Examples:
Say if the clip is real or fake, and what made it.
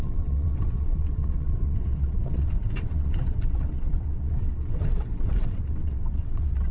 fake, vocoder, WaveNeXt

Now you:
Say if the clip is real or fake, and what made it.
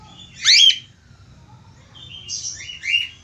real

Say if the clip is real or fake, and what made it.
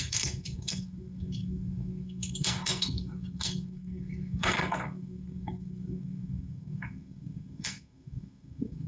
fake, codec, SNAC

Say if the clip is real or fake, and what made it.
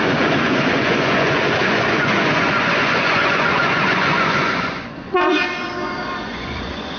fake, vocoder, Vocos